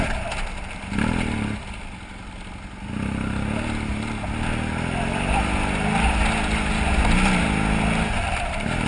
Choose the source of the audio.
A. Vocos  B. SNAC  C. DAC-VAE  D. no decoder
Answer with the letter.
D